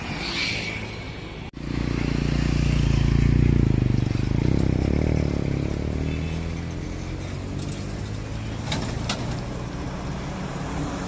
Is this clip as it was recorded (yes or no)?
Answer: yes